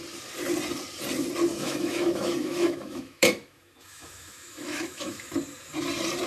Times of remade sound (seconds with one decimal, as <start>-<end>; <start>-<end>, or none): 1.5-5.3